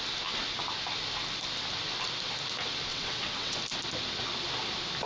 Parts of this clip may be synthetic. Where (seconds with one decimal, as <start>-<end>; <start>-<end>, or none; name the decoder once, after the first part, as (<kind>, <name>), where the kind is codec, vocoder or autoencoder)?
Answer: 2.9-3.6 (vocoder, WaveNeXt)